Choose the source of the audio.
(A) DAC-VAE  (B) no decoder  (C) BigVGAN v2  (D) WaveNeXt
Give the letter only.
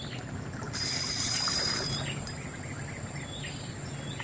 B